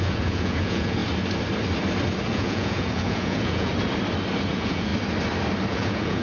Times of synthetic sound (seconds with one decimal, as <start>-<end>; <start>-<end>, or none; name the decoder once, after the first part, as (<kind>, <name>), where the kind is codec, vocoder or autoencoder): 0.0-1.0 (vocoder, Vocos); 2.3-3.7; 4.5-4.9; 5.7-6.2